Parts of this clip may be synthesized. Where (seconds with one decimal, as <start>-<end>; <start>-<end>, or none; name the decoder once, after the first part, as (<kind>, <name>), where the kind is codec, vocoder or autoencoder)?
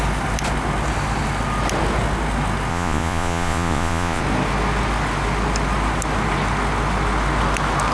2.7-4.2 (vocoder, Vocos)